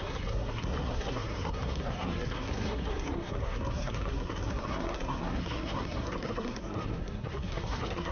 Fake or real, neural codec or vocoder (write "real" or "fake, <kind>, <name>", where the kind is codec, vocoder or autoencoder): fake, codec, SNAC